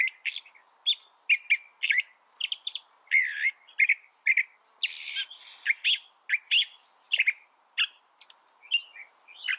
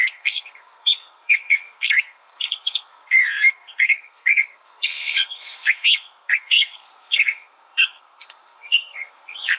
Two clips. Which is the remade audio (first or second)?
second